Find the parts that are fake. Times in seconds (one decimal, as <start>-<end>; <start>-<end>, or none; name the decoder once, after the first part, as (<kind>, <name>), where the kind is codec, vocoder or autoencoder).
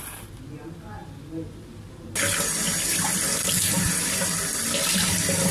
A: none